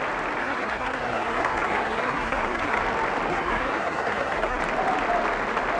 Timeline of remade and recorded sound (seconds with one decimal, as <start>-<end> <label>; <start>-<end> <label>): 0.0-0.4 recorded; 0.4-2.8 remade; 2.8-3.3 recorded; 3.3-4.6 remade; 4.6-5.8 recorded